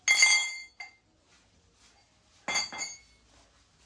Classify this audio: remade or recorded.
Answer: recorded